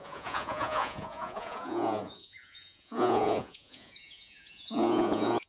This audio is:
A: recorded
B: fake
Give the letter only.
B